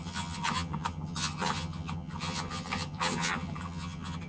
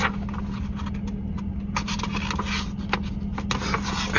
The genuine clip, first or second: second